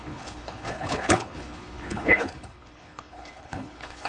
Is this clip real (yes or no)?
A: no